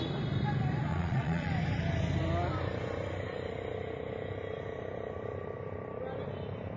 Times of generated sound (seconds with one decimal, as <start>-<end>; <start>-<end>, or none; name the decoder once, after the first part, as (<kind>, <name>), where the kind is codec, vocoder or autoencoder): 0.9-1.5 (vocoder, Vocos)